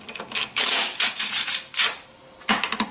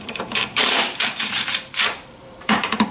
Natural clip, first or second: first